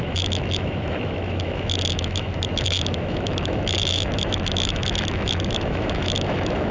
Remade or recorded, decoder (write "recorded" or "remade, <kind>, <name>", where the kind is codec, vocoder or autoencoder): remade, autoencoder, DAC-VAE